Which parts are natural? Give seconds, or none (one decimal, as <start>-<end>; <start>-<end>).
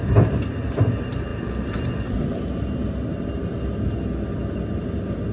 0.0-5.3